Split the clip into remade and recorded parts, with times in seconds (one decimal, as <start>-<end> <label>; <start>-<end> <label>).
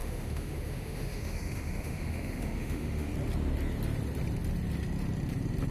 0.0-3.1 remade; 3.1-5.7 recorded